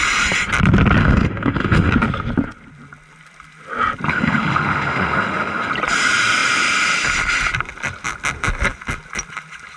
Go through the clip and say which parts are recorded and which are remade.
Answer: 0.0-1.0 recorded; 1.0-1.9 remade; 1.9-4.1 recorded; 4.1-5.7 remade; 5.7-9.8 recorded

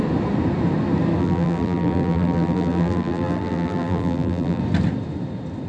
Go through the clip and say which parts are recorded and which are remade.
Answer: 0.0-1.2 recorded; 1.2-4.6 remade; 4.6-5.7 recorded

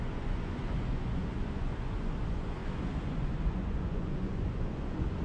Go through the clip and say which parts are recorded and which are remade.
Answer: 0.0-5.2 remade

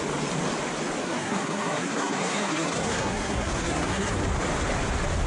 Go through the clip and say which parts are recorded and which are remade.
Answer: 0.0-1.0 recorded; 1.0-4.2 remade; 4.2-5.3 recorded

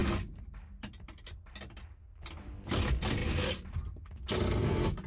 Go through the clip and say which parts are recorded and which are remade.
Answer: 0.0-5.1 recorded

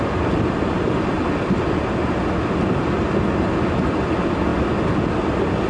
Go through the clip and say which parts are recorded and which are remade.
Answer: 0.0-5.7 recorded

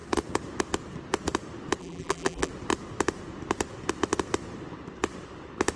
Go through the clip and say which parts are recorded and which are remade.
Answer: 0.0-1.8 recorded; 1.8-2.5 remade; 2.5-5.8 recorded